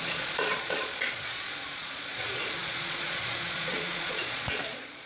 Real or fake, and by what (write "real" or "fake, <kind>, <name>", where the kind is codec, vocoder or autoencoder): fake, vocoder, Vocos